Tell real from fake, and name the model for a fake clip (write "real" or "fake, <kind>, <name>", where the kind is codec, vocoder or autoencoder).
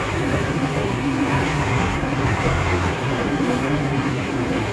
fake, codec, SNAC